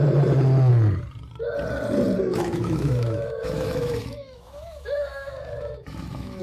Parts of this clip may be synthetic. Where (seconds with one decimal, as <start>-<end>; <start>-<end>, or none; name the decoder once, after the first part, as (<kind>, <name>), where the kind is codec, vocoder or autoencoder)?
2.3-6.4 (autoencoder, DAC-VAE)